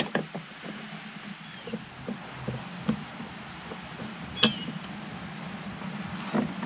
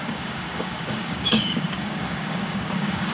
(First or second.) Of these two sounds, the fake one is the second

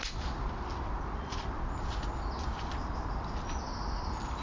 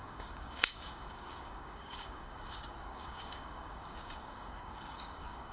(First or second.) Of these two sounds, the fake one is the second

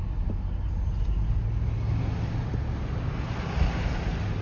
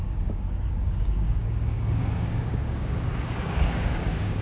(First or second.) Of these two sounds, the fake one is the second